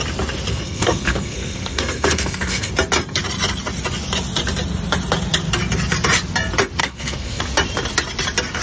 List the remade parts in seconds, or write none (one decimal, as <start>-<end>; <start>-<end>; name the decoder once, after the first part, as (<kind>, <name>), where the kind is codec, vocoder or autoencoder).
0.5-2.7 (codec, SNAC); 6.8-7.4